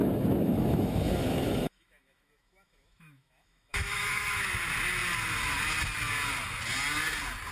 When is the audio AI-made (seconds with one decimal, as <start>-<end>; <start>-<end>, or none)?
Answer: 0.0-4.5